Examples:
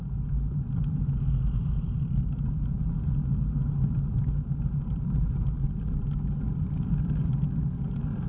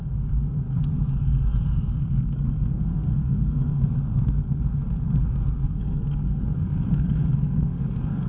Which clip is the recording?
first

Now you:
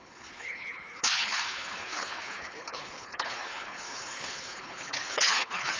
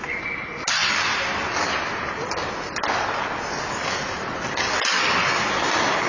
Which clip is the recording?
second